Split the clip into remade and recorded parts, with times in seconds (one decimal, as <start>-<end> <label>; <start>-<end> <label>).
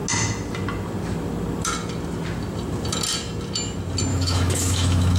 0.0-4.1 recorded; 4.1-5.2 remade